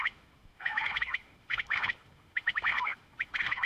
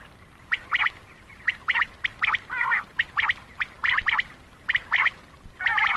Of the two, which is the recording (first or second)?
second